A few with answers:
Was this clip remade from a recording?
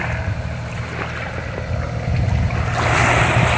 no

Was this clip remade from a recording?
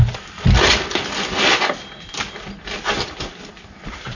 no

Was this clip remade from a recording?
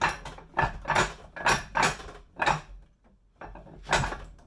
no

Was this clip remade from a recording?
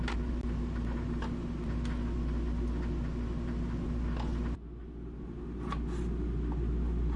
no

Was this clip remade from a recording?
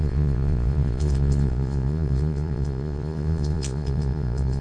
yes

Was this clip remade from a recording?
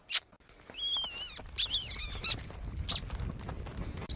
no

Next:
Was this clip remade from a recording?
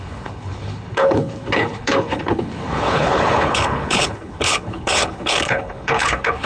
yes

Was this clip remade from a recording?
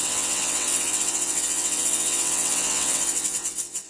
yes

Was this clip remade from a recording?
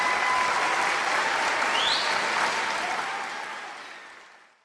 no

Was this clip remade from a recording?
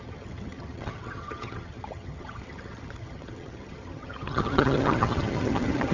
yes